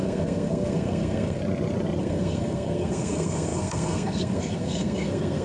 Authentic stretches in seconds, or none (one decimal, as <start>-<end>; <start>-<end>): 1.4-2.0